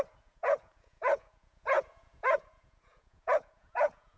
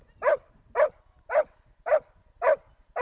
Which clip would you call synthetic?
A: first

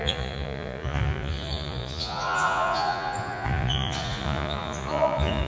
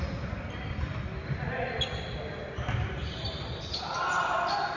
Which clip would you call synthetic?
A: first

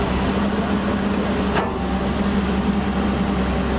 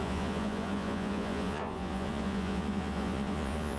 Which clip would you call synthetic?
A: second